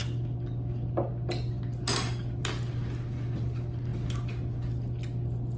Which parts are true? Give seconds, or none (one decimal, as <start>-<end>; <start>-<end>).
0.0-5.6